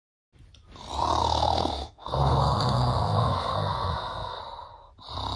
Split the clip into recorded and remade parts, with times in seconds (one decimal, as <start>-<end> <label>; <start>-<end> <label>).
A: 0.0-1.2 recorded; 1.2-4.4 remade; 4.4-5.4 recorded